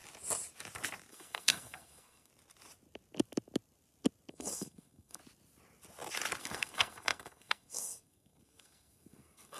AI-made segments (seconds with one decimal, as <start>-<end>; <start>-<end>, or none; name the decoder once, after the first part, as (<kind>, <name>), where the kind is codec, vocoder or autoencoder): 1.1-2.3 (codec, SNAC); 4.3-5.2; 6.4-9.6